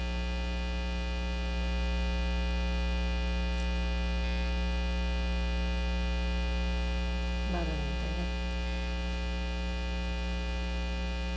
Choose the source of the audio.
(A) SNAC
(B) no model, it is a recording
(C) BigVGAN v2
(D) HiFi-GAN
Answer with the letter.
B